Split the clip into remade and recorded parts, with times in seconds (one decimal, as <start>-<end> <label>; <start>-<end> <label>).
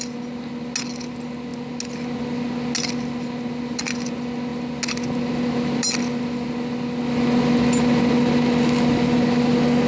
0.0-9.9 recorded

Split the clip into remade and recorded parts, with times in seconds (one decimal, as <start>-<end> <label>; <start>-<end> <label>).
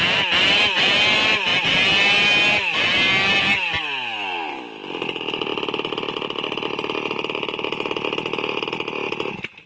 0.0-9.7 recorded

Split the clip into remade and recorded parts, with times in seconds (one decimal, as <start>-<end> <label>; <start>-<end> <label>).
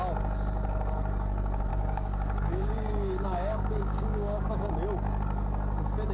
0.0-1.7 recorded; 1.7-4.7 remade; 4.7-6.1 recorded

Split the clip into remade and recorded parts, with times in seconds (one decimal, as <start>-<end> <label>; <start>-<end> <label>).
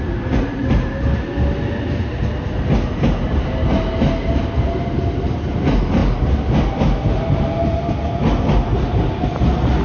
0.0-9.8 recorded